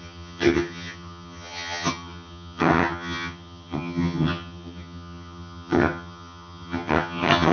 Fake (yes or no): yes